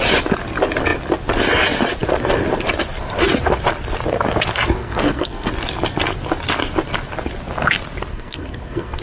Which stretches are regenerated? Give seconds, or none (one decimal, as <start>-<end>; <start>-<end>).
4.8-5.5; 8.1-9.0